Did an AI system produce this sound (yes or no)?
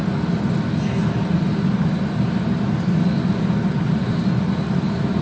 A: no